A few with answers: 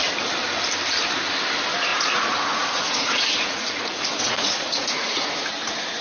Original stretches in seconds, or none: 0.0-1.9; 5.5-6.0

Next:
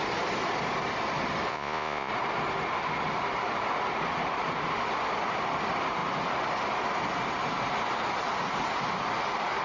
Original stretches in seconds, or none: 0.0-1.5; 2.1-9.6

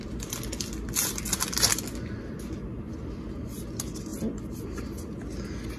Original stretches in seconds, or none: 0.0-5.8

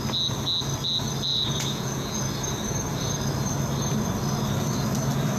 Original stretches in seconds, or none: 0.0-1.3; 2.2-5.4

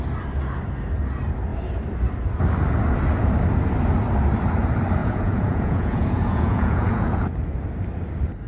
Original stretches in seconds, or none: 0.0-5.0; 7.3-8.5

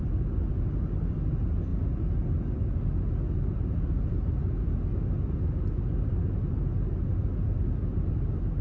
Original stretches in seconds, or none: 0.0-8.6

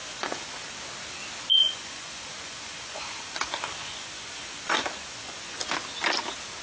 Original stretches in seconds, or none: 0.7-1.6; 5.6-6.6

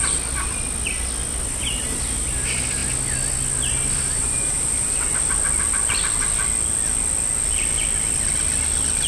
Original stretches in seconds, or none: 0.0-9.1